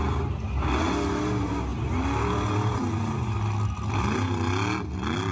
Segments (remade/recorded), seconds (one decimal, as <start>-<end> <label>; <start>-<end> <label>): 0.0-5.3 recorded